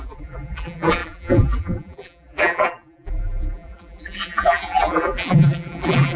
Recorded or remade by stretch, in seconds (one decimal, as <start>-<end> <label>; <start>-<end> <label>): 0.0-6.2 remade